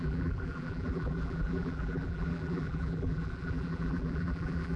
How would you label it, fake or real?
fake